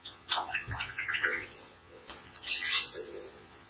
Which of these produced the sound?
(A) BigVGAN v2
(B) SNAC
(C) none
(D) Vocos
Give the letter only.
D